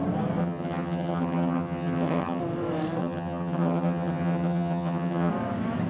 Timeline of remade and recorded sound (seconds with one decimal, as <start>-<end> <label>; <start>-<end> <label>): 0.0-0.4 recorded; 0.4-2.4 remade; 2.4-3.0 recorded; 3.0-5.3 remade; 5.3-5.9 recorded